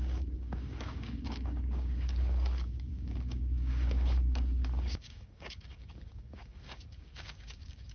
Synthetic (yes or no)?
yes